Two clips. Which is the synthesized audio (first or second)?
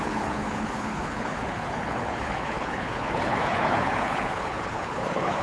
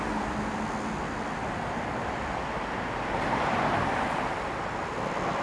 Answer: first